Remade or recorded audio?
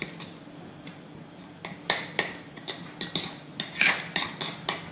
recorded